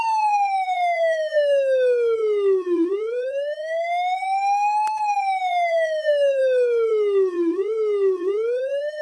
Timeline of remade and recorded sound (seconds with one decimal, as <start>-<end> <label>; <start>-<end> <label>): 0.0-9.0 remade